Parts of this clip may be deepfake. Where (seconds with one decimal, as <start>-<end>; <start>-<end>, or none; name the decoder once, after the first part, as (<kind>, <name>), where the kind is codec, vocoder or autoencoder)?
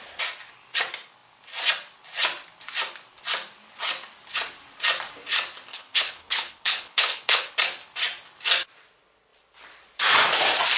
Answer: 5.7-7.5 (codec, HILCodec)